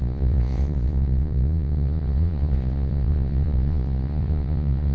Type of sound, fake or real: fake